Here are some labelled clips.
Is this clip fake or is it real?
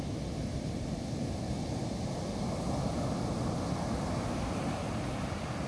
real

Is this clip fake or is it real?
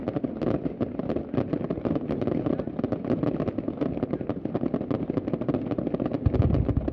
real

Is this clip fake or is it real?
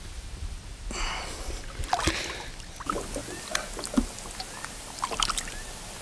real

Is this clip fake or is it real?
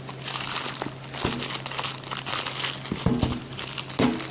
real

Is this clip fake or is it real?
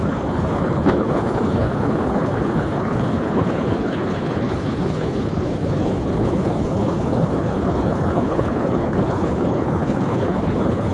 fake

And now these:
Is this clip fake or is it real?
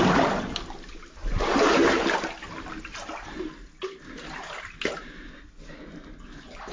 real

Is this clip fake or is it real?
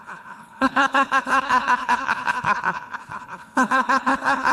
fake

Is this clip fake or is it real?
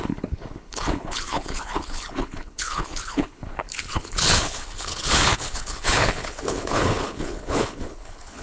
fake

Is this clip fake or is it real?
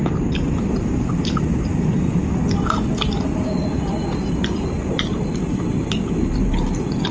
real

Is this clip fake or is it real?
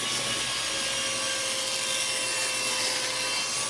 real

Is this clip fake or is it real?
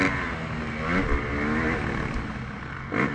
real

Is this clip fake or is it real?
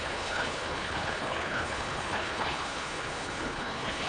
fake